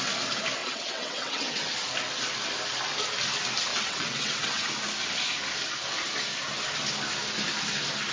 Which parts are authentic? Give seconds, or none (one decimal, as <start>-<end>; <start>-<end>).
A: 0.0-0.6; 1.7-3.7; 4.7-8.1